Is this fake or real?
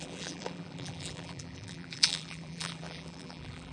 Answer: fake